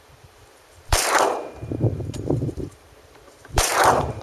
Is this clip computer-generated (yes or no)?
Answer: yes